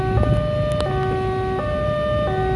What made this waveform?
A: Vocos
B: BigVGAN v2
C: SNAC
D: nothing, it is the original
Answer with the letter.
D